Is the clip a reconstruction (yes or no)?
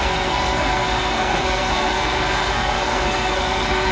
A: yes